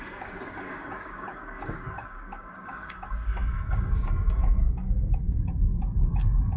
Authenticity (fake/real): fake